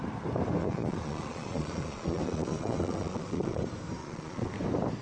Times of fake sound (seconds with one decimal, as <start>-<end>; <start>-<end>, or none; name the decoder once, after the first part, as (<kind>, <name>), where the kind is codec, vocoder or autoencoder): 0.6-3.6 (vocoder, Vocos); 4.0-4.5

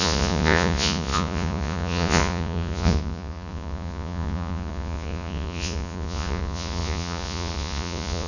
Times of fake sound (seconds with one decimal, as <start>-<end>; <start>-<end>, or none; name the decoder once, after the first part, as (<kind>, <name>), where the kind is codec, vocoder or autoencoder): 0.0-8.3 (vocoder, Vocos)

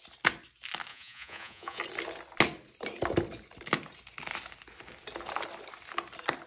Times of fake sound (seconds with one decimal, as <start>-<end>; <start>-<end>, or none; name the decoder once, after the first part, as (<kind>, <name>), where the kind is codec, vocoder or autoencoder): 0.9-1.8 (vocoder, Vocos)

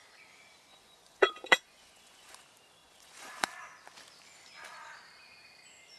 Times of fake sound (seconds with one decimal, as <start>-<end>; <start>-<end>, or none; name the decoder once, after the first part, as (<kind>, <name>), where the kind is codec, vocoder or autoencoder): 0.7-2.4 (vocoder, Vocos); 2.8-3.5